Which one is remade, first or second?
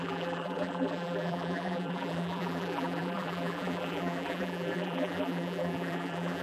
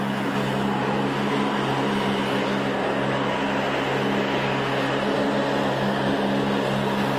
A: first